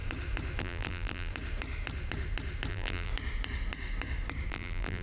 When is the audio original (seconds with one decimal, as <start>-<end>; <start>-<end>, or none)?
0.0-0.6; 1.3-2.7; 3.1-4.5